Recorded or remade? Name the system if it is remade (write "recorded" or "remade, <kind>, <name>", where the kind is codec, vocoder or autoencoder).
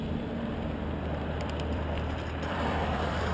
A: remade, vocoder, BigVGAN v2